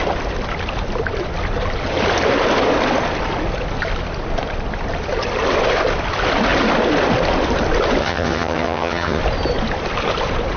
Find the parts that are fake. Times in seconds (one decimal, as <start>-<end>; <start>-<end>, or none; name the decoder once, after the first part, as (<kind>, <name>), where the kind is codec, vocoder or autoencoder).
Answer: 8.0-9.2 (vocoder, HiFi-GAN)